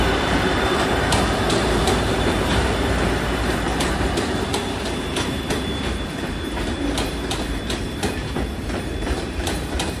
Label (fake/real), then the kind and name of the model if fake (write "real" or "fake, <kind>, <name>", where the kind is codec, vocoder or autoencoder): fake, vocoder, BigVGAN v2